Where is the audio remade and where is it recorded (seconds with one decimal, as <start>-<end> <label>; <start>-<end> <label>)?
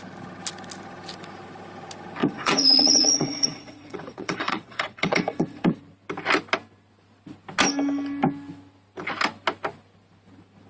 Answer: 0.0-2.2 recorded; 2.2-5.8 remade; 5.8-10.7 recorded